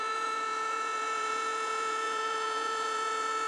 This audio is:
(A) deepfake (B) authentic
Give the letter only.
A